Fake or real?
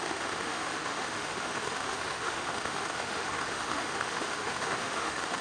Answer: fake